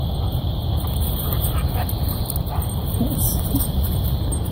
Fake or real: real